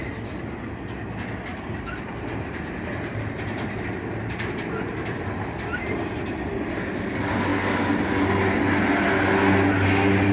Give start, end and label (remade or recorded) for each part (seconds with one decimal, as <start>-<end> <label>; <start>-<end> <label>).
0.0-1.5 recorded; 1.5-4.9 remade; 4.9-10.3 recorded